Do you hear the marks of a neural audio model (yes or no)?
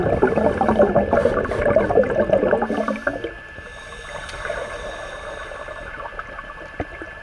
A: no